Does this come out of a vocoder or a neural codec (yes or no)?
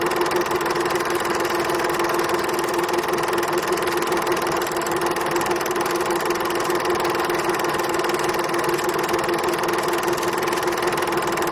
no